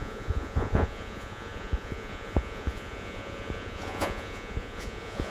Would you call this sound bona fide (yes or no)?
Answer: no